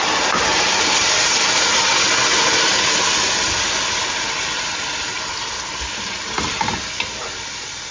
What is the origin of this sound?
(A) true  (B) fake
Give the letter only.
A